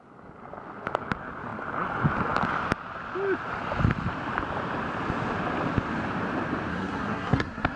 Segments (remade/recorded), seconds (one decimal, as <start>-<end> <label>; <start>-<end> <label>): 0.0-6.7 recorded; 6.7-7.8 remade